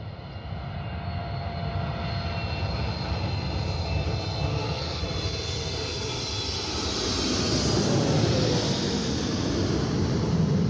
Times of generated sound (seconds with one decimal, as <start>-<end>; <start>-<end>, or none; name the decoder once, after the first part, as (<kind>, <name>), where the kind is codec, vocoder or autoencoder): 4.5-5.0 (codec, SNAC)